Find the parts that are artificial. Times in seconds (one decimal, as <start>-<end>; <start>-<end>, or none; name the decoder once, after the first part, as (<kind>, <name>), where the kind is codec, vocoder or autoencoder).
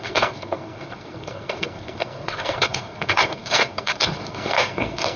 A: 0.0-5.2 (codec, SNAC)